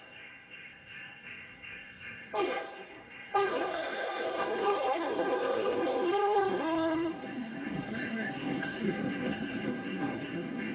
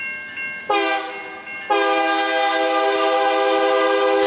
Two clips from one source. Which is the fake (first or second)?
first